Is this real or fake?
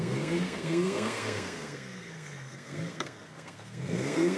fake